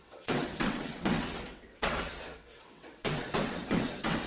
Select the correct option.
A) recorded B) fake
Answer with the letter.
B